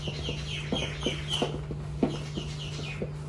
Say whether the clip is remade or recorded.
recorded